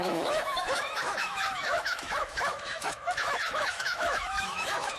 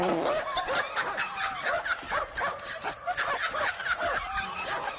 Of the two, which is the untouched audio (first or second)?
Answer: second